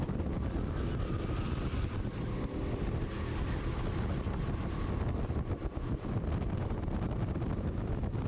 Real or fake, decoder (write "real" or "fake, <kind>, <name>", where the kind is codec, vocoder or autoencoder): real